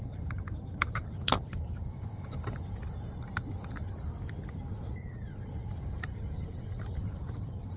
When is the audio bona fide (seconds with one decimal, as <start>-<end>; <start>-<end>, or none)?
2.8-5.6